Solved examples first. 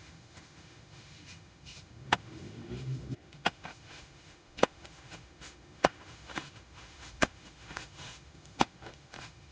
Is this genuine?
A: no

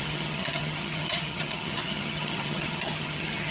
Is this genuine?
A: no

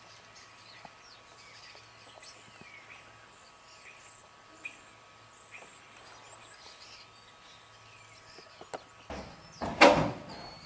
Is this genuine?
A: yes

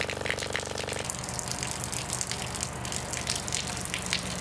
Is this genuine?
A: yes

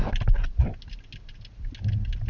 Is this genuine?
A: yes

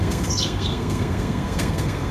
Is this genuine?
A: no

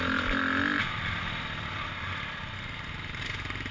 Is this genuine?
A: yes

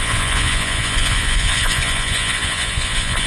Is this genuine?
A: no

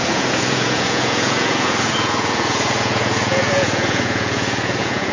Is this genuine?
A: no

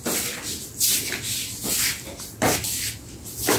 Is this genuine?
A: yes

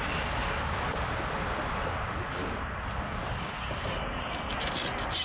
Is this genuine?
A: yes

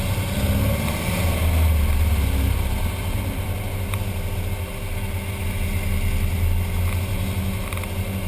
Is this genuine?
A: yes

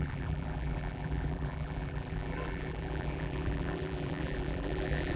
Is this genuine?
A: no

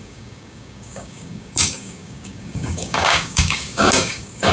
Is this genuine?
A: no